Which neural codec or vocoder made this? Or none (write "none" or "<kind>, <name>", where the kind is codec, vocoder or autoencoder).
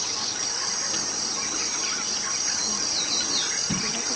none